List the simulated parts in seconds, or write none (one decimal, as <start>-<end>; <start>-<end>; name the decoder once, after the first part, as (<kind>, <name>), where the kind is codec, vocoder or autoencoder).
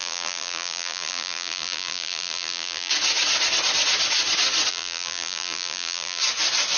0.0-2.9 (vocoder, BigVGAN v2); 4.7-6.2